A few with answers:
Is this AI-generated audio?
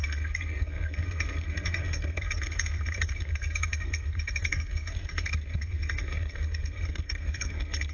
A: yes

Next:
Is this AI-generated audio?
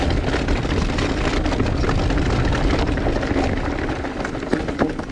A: no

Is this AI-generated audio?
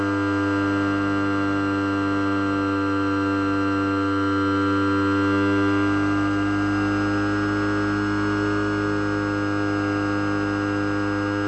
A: no